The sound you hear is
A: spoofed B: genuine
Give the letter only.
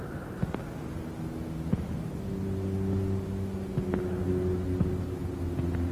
B